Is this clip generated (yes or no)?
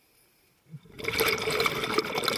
no